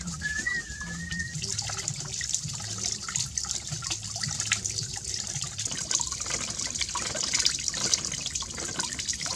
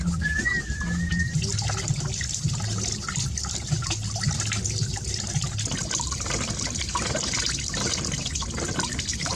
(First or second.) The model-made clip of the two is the first